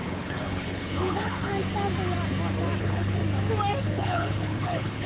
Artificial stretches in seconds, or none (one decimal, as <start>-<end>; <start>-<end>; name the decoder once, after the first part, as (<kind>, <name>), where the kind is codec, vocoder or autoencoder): 0.0-1.5 (codec, HILCodec); 2.8-3.2; 3.8-5.1